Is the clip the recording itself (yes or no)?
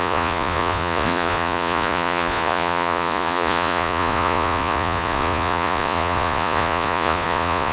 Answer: no